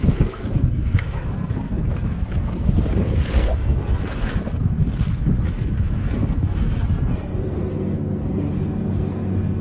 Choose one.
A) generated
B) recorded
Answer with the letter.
A